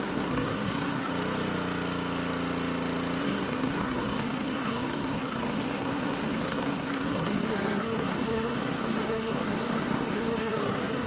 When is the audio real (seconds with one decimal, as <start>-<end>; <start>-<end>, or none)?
1.1-3.2